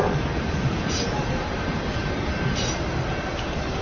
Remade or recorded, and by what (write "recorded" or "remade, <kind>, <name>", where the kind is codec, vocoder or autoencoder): recorded